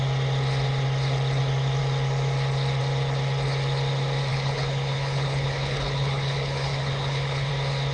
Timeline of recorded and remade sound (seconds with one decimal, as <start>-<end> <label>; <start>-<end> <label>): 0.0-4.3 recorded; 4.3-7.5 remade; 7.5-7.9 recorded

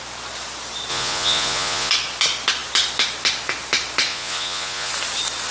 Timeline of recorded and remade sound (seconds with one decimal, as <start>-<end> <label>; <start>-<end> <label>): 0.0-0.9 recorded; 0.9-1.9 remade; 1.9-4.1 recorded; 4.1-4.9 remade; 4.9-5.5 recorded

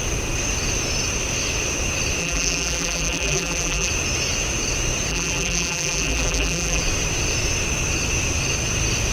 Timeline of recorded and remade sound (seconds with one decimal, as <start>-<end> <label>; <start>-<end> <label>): 0.0-2.2 recorded; 2.2-3.9 remade; 3.9-5.1 recorded; 5.1-6.8 remade; 6.8-9.1 recorded

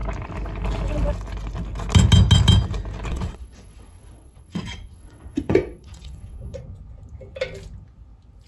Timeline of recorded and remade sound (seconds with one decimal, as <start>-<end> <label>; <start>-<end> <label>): 0.0-3.1 recorded; 3.1-6.6 remade; 6.6-8.5 recorded

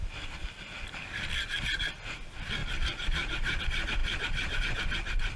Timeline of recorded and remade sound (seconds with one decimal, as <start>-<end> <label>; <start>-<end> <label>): 0.0-2.6 recorded; 2.6-3.6 remade; 3.6-4.0 recorded; 4.0-4.6 remade; 4.6-5.4 recorded

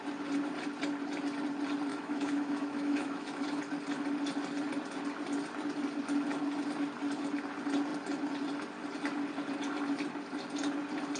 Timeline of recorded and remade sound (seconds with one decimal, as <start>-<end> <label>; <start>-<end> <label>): 0.0-1.9 recorded; 1.9-3.6 remade; 3.6-11.2 recorded